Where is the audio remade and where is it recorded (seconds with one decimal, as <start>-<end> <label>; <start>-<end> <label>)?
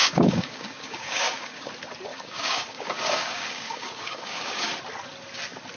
0.0-1.7 remade; 1.7-2.1 recorded; 2.1-4.7 remade; 4.7-5.8 recorded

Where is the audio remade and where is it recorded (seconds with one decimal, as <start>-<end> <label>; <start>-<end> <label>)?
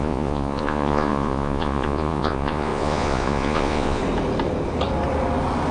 0.0-4.0 remade; 4.0-5.7 recorded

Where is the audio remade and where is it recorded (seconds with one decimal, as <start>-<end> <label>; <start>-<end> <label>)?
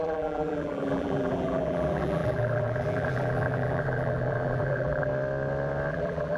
0.0-5.1 remade; 5.1-5.9 recorded; 5.9-6.4 remade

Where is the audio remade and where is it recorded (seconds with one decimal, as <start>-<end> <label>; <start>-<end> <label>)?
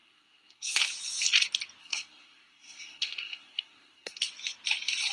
0.0-0.8 remade; 0.8-1.8 recorded; 1.8-4.2 remade; 4.2-5.1 recorded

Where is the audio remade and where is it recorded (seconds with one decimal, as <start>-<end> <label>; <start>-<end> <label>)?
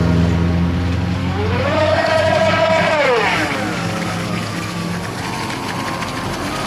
0.0-1.2 recorded; 1.2-2.7 remade; 2.7-3.3 recorded; 3.3-5.2 remade; 5.2-6.7 recorded